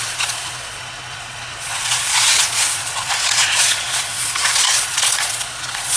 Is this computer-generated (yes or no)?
yes